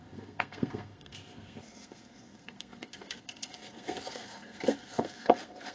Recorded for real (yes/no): no